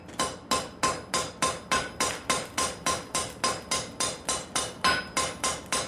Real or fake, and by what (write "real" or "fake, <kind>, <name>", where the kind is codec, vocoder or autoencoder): real